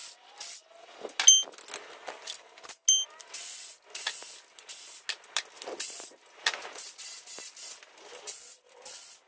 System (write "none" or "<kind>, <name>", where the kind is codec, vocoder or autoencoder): none